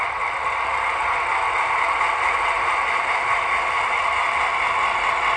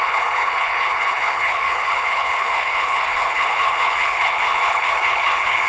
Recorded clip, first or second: first